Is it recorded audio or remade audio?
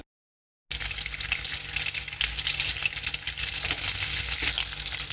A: recorded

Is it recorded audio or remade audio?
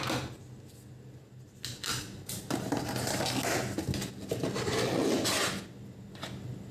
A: recorded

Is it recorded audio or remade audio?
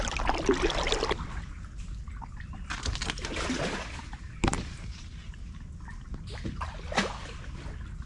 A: recorded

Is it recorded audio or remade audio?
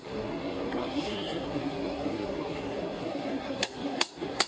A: remade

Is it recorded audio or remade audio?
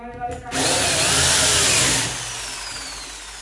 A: recorded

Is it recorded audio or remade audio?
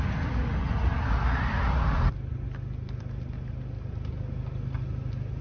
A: recorded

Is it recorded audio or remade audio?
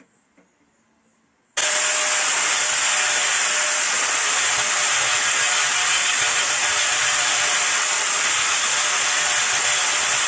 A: recorded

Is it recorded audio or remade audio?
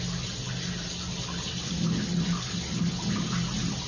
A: recorded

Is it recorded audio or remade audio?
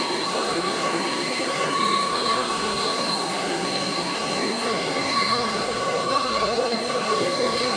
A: remade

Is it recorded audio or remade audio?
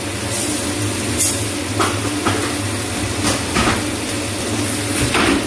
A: recorded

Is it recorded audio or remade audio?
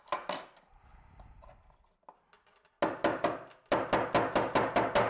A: recorded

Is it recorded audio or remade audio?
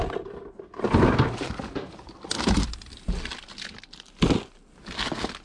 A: recorded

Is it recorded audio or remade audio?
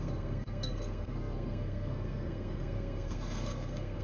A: remade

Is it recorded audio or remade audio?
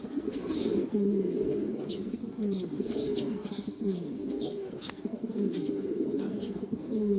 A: remade